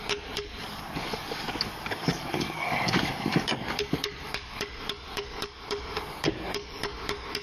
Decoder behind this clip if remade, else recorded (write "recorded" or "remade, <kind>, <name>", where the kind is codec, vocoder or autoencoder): remade, codec, DAC